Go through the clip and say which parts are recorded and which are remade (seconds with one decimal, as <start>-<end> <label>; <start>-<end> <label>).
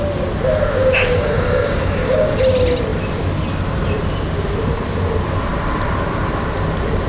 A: 0.0-0.8 recorded; 0.8-2.4 remade; 2.4-7.1 recorded